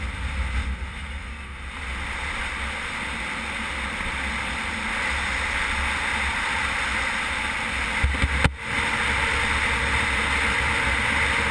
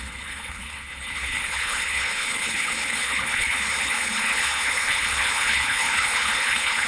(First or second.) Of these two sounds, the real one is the first